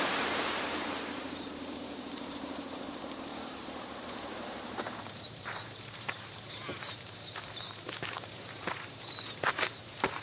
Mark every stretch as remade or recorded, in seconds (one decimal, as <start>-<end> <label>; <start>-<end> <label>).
0.0-10.2 remade